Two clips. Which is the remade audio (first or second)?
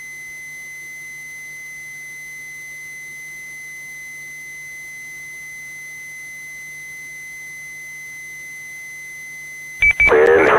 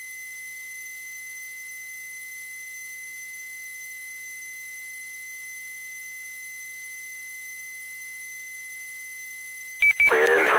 second